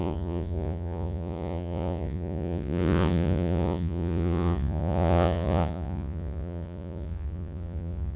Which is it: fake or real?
fake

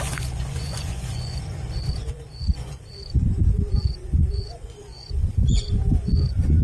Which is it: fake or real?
fake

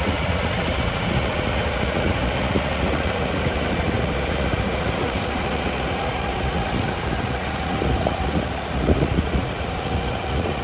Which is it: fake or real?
fake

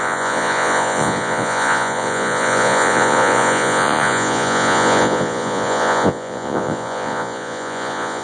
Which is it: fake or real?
fake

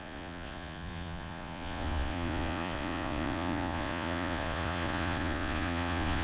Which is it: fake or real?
fake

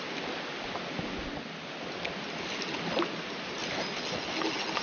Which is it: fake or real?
real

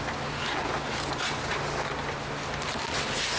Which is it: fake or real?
real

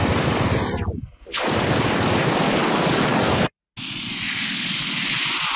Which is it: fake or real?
real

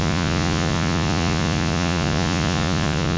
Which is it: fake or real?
fake